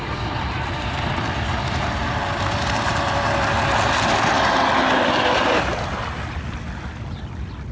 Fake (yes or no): no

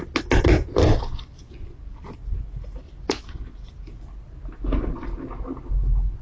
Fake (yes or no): no